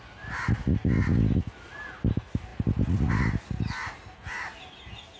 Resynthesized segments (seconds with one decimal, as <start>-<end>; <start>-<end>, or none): none

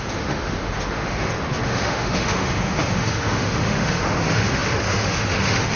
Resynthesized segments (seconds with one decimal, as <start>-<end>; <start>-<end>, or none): 0.0-5.8